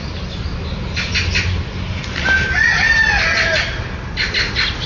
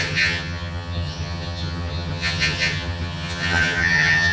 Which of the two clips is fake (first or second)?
second